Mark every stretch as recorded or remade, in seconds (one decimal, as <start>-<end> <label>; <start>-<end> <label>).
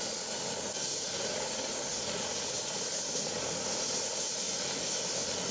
0.0-0.9 recorded; 0.9-4.2 remade; 4.2-5.5 recorded